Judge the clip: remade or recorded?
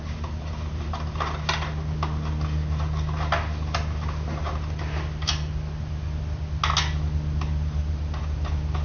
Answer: recorded